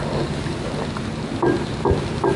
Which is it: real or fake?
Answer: real